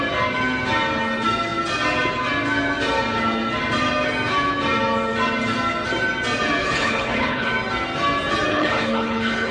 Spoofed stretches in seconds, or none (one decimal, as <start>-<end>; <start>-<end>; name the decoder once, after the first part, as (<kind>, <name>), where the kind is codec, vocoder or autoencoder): 6.6-7.5 (codec, HILCodec); 8.5-9.5